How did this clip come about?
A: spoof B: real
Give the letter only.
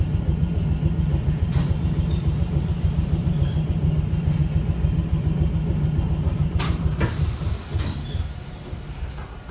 B